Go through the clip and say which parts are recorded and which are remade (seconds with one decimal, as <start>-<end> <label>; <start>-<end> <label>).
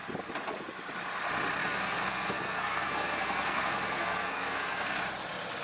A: 0.0-1.6 recorded; 1.6-5.0 remade; 5.0-5.6 recorded